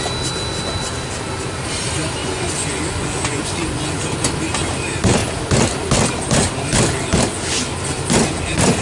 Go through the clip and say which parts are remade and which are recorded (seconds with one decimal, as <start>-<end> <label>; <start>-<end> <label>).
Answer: 0.0-2.2 recorded; 2.2-4.0 remade; 4.0-8.8 recorded